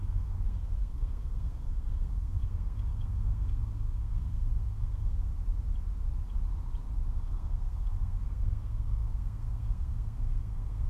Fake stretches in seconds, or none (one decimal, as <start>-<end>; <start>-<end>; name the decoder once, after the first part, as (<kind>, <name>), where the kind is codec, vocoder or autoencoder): 0.0-5.3 (codec, SNAC); 7.1-10.9